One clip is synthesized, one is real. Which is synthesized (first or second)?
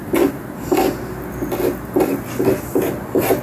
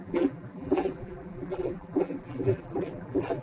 second